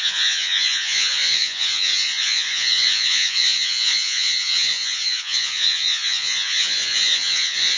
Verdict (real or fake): fake